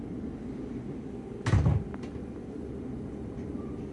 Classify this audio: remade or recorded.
recorded